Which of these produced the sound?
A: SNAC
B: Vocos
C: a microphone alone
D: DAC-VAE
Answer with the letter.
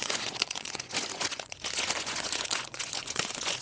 B